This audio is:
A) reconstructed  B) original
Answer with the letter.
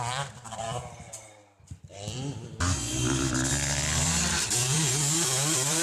A